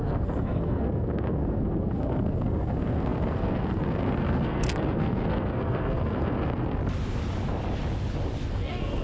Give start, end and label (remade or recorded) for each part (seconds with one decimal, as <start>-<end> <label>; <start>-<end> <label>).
0.0-6.8 remade; 6.8-8.5 recorded; 8.5-9.0 remade